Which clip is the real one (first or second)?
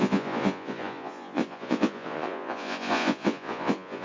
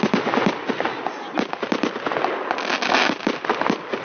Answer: second